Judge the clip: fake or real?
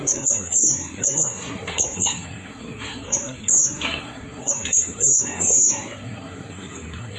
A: fake